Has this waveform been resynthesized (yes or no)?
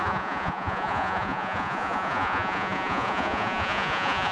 yes